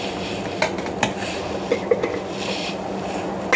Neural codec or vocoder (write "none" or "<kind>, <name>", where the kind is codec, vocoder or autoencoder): none